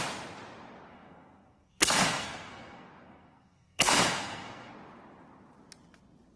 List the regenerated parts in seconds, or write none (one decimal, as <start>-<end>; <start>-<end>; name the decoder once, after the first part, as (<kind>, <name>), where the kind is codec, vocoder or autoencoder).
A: 0.9-4.7 (codec, SNAC)